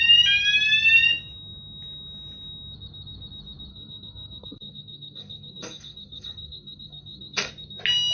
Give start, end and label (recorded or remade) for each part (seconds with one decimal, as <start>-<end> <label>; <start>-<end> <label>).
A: 0.0-3.7 recorded; 3.7-7.5 remade; 7.5-8.1 recorded